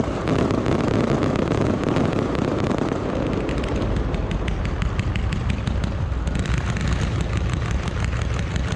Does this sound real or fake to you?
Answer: fake